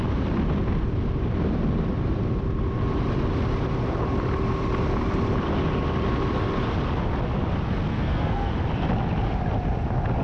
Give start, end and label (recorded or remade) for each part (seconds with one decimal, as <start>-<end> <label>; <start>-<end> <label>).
0.0-7.9 recorded; 7.9-8.5 remade; 8.5-10.2 recorded